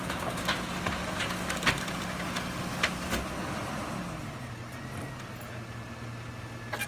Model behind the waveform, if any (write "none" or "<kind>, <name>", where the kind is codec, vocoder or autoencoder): none